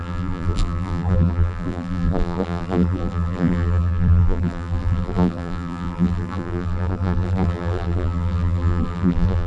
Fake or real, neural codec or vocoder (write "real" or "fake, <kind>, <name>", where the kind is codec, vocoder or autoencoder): fake, vocoder, BigVGAN v2